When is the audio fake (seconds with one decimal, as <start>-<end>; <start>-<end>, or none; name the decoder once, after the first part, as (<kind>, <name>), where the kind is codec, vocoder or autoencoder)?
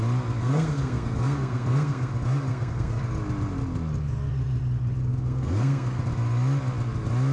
0.4-2.1 (codec, SNAC); 2.5-3.0; 5.1-6.0